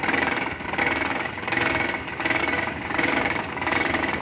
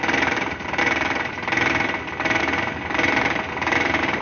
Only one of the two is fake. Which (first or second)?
first